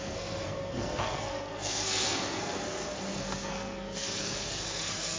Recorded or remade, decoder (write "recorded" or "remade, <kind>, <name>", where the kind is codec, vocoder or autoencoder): remade, codec, SNAC